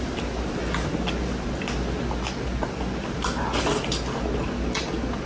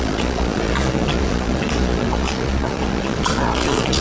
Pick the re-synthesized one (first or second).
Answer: second